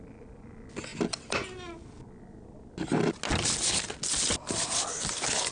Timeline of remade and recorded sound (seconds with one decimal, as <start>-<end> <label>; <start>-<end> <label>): 0.0-5.5 recorded